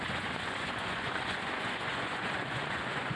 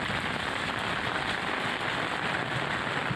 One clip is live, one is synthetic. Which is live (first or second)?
second